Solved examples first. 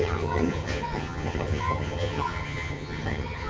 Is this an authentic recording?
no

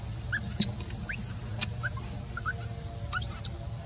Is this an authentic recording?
yes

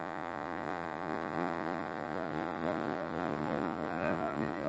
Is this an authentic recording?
no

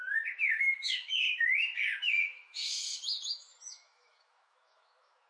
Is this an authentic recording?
no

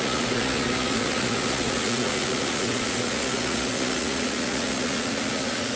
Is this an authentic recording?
no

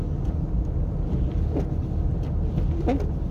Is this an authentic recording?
yes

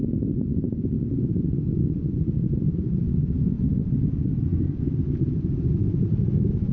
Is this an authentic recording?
yes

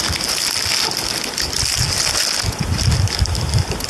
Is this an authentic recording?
yes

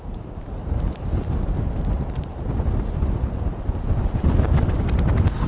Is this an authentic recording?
no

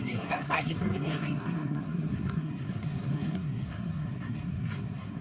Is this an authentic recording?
no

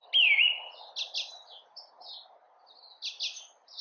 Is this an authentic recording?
yes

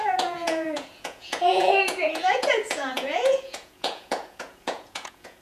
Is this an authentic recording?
no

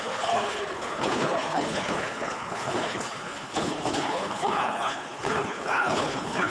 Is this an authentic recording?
no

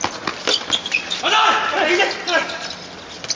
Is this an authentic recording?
yes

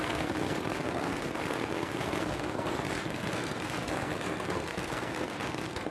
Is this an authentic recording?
no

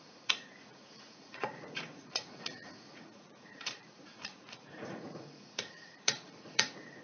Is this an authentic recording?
no